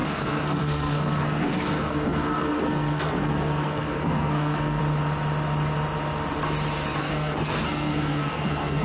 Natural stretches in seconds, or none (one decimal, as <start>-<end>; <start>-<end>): 4.8-7.0